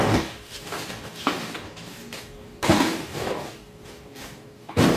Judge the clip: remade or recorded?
remade